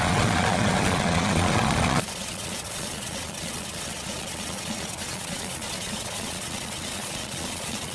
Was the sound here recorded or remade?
remade